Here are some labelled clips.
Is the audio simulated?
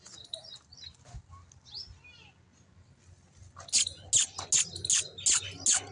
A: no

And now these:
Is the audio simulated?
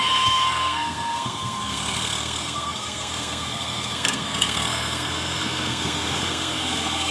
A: yes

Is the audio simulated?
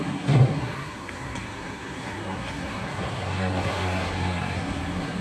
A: yes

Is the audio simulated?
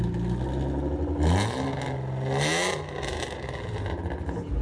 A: no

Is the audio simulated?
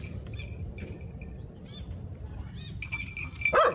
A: no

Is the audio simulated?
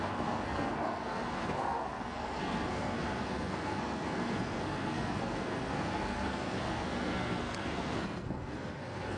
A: yes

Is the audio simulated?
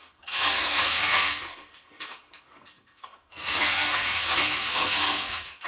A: yes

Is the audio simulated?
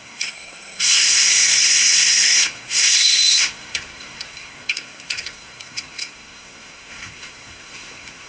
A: yes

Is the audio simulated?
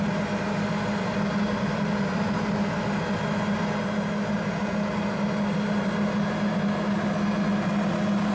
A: no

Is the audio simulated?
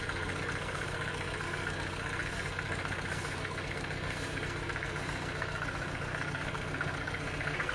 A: yes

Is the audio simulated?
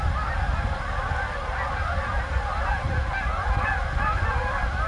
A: no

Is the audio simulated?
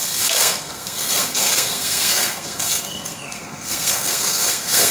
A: yes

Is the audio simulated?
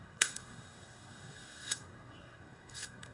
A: yes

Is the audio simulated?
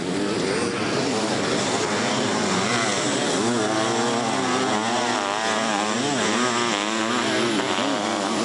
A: no